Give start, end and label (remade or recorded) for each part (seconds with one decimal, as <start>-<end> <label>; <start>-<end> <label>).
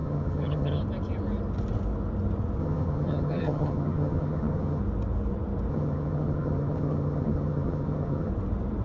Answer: 0.0-0.8 remade; 0.8-2.6 recorded; 2.6-4.8 remade; 4.8-5.7 recorded; 5.7-8.3 remade; 8.3-8.8 recorded